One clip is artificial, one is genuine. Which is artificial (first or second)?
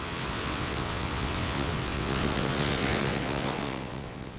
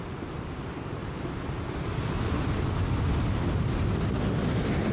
first